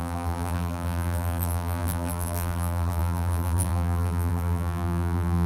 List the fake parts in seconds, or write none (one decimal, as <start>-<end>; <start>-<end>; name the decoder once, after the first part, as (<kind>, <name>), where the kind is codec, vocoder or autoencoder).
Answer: 0.0-5.5 (vocoder, BigVGAN v2)

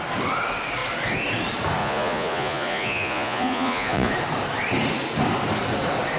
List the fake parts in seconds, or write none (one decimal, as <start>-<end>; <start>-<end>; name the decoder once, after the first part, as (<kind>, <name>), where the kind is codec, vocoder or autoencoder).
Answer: 1.8-4.1 (vocoder, Vocos)

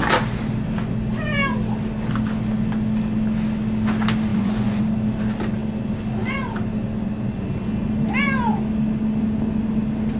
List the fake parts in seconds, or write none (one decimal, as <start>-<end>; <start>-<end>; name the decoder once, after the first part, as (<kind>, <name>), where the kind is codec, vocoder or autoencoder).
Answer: 4.3-4.8 (vocoder, Vocos)

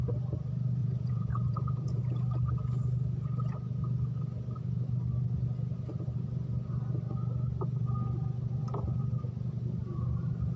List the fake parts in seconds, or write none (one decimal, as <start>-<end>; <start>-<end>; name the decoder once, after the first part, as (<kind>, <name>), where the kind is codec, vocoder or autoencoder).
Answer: 0.8-2.0 (vocoder, Vocos)

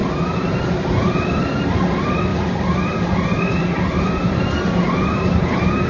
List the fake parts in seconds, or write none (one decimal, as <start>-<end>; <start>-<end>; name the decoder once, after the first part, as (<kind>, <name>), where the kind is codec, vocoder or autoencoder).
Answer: none

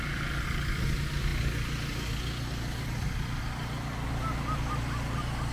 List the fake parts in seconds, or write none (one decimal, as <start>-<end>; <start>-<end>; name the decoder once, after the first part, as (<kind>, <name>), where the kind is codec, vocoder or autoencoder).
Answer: none

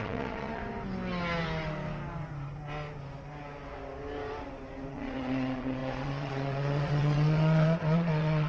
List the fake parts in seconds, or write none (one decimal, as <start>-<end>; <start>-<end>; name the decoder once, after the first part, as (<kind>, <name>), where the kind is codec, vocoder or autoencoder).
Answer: 0.0-0.6 (vocoder, Vocos); 4.9-8.5